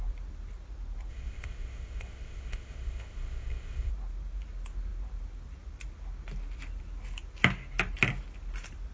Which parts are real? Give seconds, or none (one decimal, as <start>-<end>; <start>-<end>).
0.0-1.1; 3.9-8.9